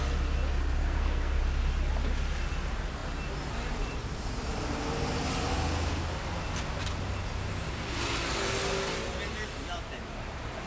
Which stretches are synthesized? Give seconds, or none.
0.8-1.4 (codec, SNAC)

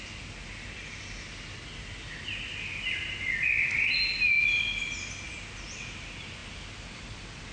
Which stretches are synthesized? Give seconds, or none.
none

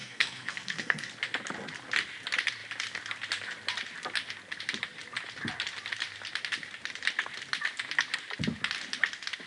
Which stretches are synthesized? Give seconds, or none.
0.0-1.1 (codec, SNAC)

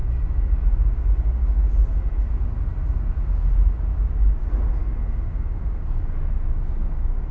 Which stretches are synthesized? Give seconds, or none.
none